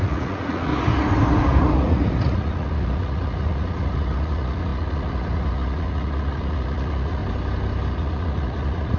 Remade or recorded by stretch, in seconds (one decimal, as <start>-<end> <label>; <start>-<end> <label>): 0.0-0.7 remade; 0.7-1.6 recorded; 1.6-7.2 remade; 7.2-7.9 recorded; 7.9-9.0 remade